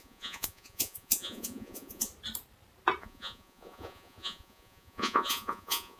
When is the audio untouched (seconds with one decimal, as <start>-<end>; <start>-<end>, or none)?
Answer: 2.1-3.0